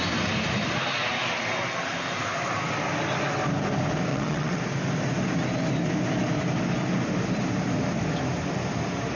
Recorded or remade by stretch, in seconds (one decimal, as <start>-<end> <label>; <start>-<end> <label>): 0.0-4.1 recorded; 4.1-4.6 remade; 4.6-9.2 recorded